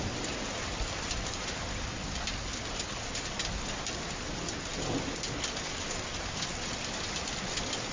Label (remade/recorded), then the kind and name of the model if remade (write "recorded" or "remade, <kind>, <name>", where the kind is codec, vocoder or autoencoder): recorded